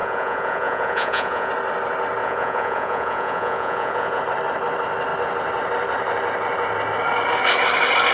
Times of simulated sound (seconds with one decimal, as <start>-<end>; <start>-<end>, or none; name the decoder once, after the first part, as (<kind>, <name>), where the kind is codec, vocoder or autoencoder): 0.0-1.5 (vocoder, Vocos); 2.2-4.2